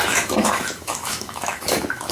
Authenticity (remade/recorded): remade